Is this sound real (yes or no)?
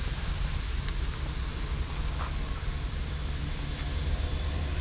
yes